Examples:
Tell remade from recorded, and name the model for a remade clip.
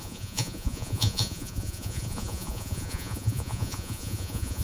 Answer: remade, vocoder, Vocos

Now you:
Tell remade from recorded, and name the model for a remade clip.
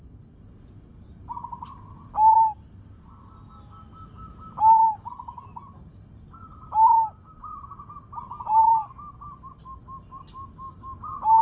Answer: recorded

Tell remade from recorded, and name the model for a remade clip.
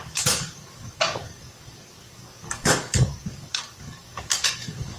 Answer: remade, codec, DAC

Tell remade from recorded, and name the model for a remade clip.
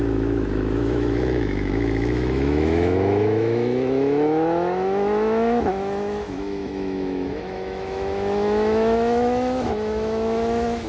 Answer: remade, autoencoder, DAC-VAE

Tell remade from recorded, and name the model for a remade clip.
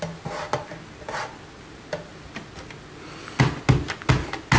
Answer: recorded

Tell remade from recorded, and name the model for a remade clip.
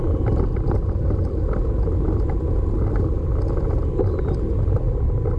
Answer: recorded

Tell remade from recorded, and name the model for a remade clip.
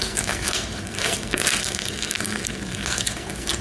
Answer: remade, codec, SNAC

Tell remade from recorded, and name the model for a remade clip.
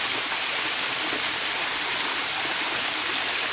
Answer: recorded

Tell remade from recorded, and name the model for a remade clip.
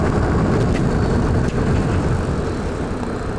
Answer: remade, vocoder, BigVGAN v2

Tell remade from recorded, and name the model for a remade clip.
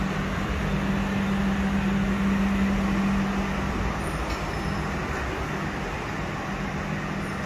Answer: recorded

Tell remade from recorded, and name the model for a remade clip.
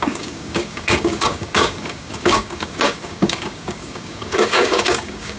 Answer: remade, codec, DAC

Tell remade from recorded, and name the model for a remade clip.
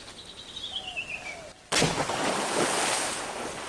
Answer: recorded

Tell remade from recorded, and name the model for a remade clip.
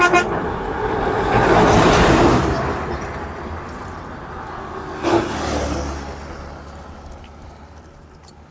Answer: recorded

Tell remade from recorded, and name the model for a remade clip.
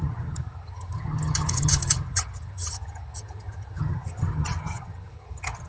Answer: remade, vocoder, HiFi-GAN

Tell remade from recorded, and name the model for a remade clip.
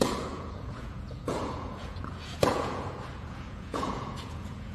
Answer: remade, vocoder, Vocos